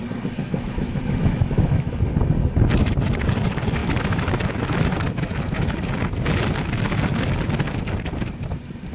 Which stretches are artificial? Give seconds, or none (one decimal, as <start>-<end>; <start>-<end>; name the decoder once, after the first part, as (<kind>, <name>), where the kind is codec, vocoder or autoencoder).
0.4-2.0 (autoencoder, DAC-VAE); 3.8-5.9